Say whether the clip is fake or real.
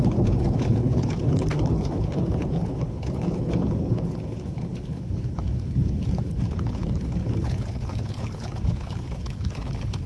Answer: fake